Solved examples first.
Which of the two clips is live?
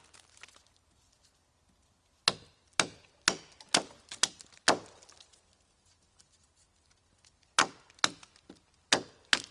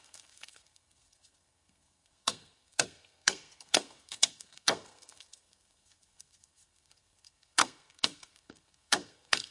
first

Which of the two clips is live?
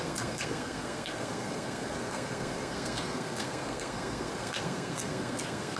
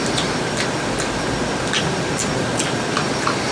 second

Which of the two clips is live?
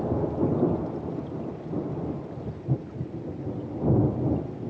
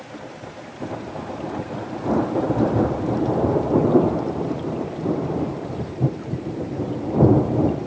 first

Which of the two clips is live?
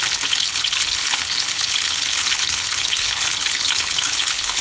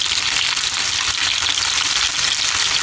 second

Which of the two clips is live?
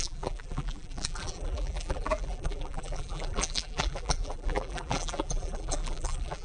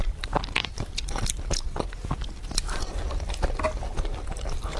second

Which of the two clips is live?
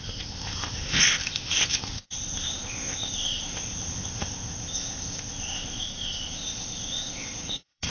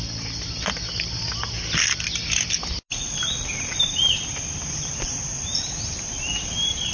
second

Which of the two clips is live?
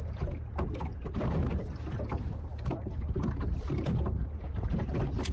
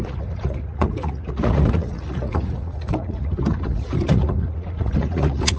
first